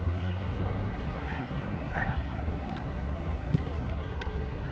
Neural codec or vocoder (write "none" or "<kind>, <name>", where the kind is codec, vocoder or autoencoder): codec, SNAC